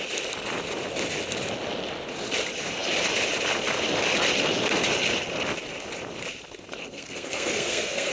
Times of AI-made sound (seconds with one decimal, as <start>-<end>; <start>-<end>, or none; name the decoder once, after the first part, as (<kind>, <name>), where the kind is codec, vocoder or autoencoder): 6.8-8.1 (codec, SNAC)